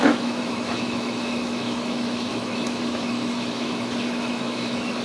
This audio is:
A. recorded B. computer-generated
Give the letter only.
B